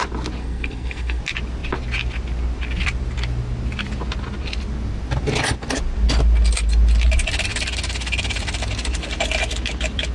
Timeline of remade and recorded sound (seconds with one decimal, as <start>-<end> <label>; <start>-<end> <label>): 0.0-0.4 recorded; 0.4-1.2 remade; 1.2-10.1 recorded